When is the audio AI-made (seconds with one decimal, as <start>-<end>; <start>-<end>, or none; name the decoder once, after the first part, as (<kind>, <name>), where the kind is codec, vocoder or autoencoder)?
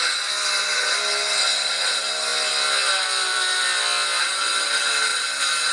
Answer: none